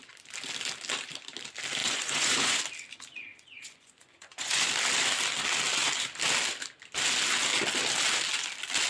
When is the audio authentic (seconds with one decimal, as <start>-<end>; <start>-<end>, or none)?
0.0-1.8; 2.6-3.3; 4.7-8.9